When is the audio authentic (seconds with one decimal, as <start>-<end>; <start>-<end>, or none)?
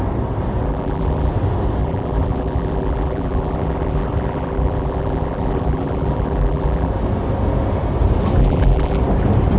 0.0-0.6; 1.3-1.8; 6.9-8.4; 9.0-9.6